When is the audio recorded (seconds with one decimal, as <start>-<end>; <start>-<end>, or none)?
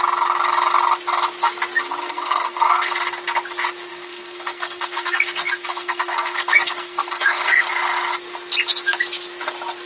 0.0-2.0; 2.9-3.9; 7.7-9.9